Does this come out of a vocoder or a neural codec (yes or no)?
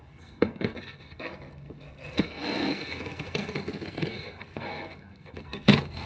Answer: yes